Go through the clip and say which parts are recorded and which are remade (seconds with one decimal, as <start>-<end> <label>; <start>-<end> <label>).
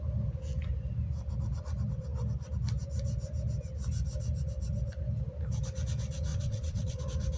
0.0-6.3 recorded; 6.3-7.0 remade; 7.0-7.4 recorded